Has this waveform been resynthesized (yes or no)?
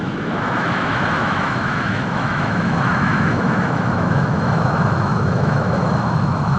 yes